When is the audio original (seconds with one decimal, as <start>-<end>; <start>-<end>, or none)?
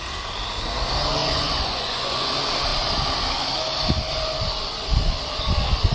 0.0-1.2; 2.3-5.9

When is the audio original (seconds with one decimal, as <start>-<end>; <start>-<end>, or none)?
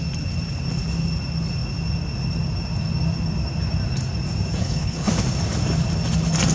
0.0-4.6; 5.1-6.5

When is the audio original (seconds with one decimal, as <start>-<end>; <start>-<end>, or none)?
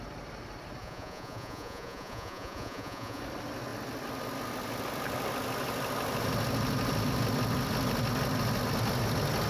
0.0-0.8; 3.2-9.5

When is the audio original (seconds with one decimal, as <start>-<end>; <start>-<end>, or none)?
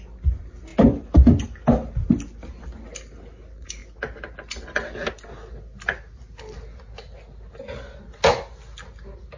0.0-9.4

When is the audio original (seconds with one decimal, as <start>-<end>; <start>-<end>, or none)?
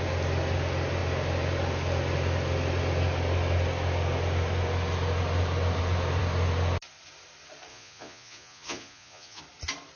0.0-7.7; 9.4-10.0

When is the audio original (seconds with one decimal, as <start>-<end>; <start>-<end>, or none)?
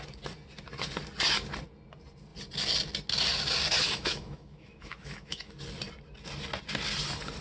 0.0-3.8; 5.5-7.4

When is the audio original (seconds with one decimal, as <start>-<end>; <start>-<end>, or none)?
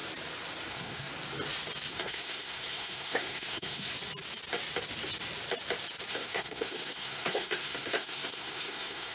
0.0-0.7; 1.1-1.9; 3.9-6.1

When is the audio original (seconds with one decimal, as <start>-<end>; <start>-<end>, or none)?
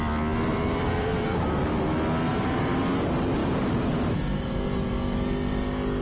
0.0-0.5; 1.6-2.3; 2.8-3.4; 4.0-6.0